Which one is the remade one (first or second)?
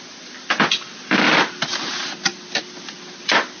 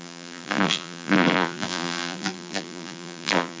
second